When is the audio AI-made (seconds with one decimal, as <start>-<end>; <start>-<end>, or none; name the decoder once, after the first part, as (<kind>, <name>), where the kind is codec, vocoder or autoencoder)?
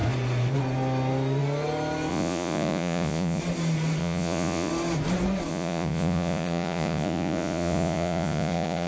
2.1-3.4 (vocoder, Vocos); 4.0-4.7; 5.5-8.9